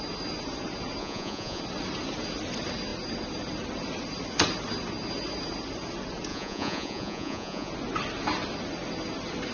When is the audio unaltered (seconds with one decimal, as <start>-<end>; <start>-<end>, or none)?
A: 0.0-1.0; 1.6-6.3; 7.7-9.5